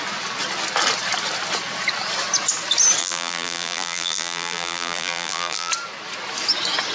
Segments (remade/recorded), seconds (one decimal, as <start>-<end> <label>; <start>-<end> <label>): 0.0-3.0 recorded; 3.0-5.7 remade; 5.7-6.9 recorded